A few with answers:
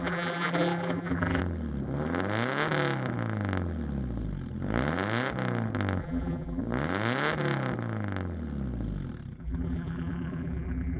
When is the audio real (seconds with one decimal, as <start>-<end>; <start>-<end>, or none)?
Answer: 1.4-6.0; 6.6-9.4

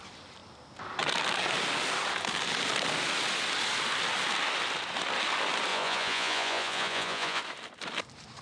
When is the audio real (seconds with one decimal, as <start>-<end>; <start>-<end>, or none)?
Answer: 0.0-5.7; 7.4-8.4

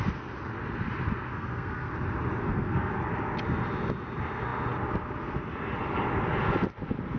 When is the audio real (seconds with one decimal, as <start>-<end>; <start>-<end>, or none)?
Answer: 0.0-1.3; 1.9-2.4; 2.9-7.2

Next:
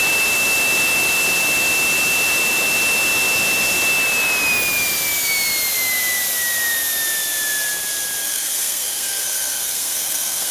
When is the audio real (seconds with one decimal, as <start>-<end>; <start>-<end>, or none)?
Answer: 0.0-8.2